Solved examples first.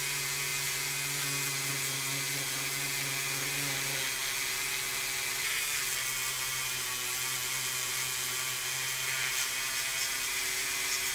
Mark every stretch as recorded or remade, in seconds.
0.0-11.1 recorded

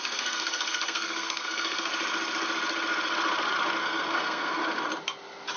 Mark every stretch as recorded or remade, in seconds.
0.0-1.9 remade; 1.9-3.8 recorded; 3.8-4.6 remade; 4.6-5.6 recorded

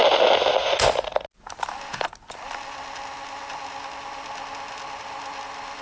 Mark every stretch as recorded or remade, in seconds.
0.0-5.8 recorded

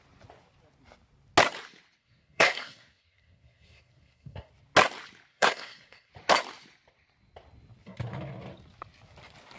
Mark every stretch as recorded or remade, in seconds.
0.0-2.0 recorded; 2.0-4.5 remade; 4.5-5.3 recorded; 5.3-6.1 remade; 6.1-9.6 recorded

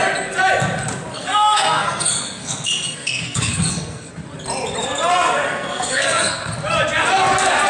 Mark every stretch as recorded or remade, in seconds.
0.0-1.1 recorded; 1.1-4.1 remade; 4.1-4.8 recorded; 4.8-6.5 remade; 6.5-7.7 recorded

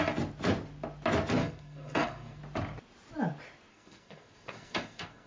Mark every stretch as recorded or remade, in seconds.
0.0-1.4 recorded; 1.4-2.4 remade; 2.4-3.7 recorded; 3.7-5.3 remade

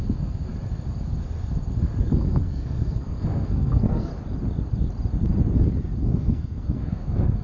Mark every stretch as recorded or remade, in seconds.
0.0-0.5 remade; 0.5-2.0 recorded; 2.0-4.1 remade; 4.1-6.0 recorded; 6.0-7.4 remade